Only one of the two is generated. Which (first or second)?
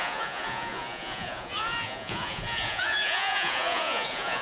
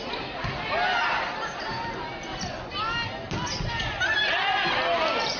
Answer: first